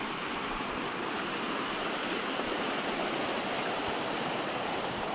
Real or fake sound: fake